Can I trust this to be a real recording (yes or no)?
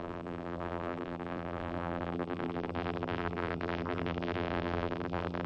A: no